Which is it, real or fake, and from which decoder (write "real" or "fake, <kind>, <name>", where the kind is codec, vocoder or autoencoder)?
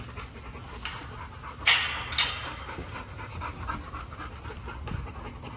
real